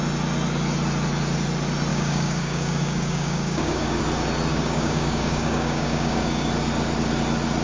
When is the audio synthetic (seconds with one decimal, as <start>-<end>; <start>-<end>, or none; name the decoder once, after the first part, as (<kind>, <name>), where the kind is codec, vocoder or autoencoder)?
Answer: 1.9-4.0 (codec, DAC); 4.5-6.5